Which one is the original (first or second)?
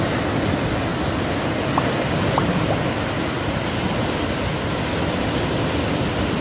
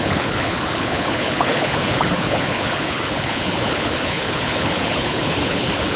first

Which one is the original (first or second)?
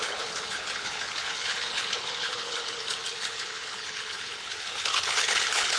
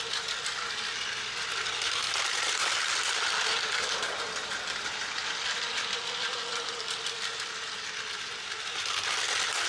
second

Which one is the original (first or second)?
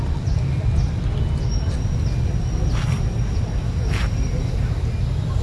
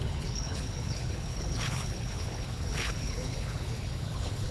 first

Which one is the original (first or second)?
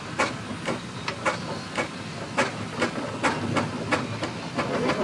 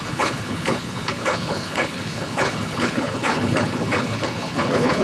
first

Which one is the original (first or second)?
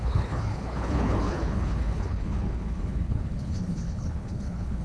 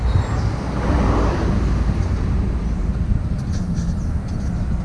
second